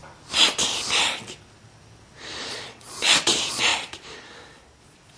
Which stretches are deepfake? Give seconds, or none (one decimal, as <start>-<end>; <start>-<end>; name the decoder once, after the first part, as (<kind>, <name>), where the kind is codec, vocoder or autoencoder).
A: 2.5-3.7 (vocoder, Vocos); 4.8-5.2

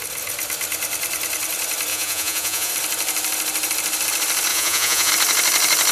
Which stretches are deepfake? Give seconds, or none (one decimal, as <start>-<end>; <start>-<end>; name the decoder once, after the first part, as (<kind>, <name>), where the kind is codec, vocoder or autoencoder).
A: 1.9-2.7 (vocoder, Vocos); 4.5-5.1

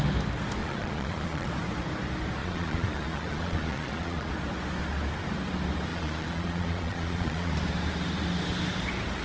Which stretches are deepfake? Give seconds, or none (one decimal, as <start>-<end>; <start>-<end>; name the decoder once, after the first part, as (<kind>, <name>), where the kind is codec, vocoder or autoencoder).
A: 0.6-1.5 (vocoder, Vocos); 2.4-4.3; 5.9-7.5

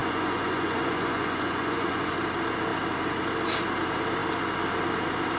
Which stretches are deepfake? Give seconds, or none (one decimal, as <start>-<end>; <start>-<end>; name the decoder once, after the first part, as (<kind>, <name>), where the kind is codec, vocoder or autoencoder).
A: 0.0-2.1 (vocoder, Vocos)

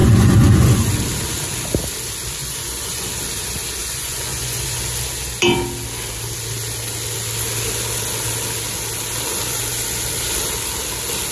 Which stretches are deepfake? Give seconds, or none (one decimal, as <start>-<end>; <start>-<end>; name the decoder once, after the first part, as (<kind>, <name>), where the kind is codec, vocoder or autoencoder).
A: 0.0-0.9 (vocoder, Vocos); 2.4-3.1; 3.8-4.8

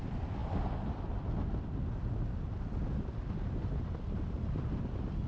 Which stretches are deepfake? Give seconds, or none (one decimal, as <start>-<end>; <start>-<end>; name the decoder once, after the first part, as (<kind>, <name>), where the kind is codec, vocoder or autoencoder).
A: none

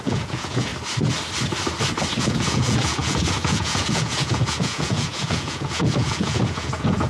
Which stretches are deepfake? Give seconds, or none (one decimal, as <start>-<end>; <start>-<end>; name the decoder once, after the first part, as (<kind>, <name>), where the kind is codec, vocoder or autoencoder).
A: 0.0-0.7 (vocoder, Vocos); 2.2-7.1

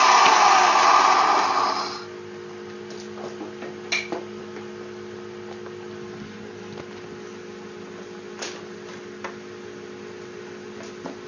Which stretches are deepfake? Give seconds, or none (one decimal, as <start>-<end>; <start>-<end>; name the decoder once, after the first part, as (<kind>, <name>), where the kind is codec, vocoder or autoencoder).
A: none